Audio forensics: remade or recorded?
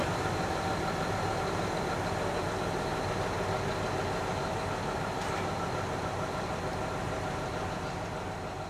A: recorded